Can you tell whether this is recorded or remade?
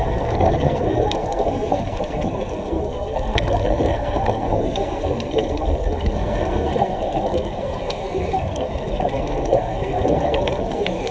remade